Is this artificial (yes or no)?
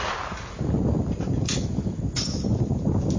no